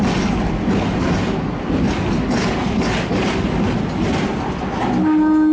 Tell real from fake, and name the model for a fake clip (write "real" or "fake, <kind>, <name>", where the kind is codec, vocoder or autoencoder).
real